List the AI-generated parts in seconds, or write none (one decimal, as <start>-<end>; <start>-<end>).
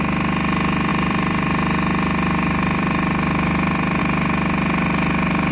0.9-4.0